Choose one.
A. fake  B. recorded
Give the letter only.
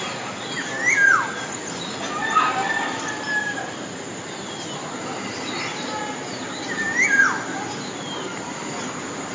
B